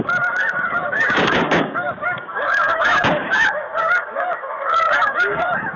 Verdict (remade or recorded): remade